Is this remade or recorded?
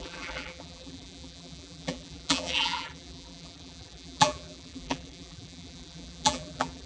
remade